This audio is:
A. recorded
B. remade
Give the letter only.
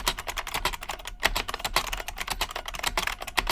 A